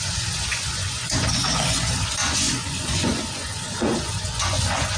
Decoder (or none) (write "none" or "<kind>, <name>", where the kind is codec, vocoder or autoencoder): vocoder, Vocos